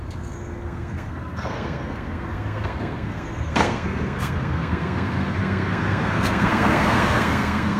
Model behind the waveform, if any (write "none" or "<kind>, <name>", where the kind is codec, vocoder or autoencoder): codec, SNAC